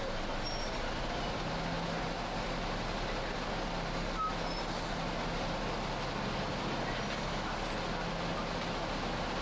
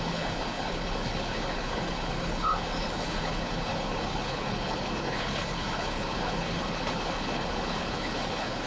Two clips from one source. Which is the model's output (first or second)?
second